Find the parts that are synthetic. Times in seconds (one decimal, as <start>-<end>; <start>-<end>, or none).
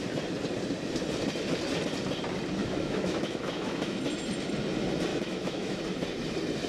2.6-4.0; 5.1-5.8